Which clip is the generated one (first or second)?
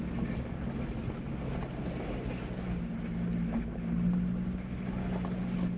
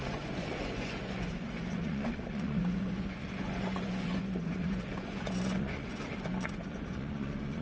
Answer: second